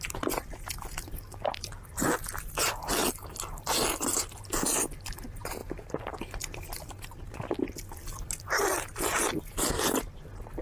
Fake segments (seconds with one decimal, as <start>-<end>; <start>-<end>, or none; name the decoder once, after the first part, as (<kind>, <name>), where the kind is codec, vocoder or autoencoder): 3.0-3.6 (vocoder, BigVGAN v2); 5.6-6.2